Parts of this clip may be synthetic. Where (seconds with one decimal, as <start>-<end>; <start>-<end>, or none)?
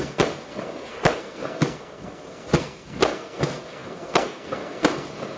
0.0-5.4